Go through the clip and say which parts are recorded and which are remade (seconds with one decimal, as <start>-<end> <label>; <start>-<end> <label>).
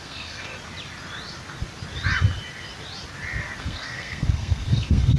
0.0-0.5 remade; 0.5-3.6 recorded; 3.6-5.2 remade